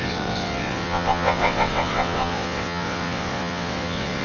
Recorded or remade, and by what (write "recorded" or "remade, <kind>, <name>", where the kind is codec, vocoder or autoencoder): remade, vocoder, WaveNeXt